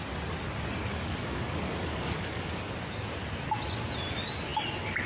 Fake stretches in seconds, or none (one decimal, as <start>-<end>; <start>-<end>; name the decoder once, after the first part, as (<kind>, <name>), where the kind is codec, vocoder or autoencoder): 0.9-2.7 (codec, DAC)